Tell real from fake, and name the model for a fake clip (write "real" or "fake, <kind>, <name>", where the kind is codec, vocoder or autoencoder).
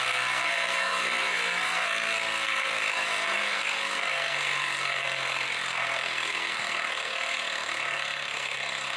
fake, codec, SNAC